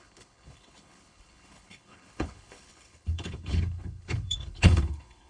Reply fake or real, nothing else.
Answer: fake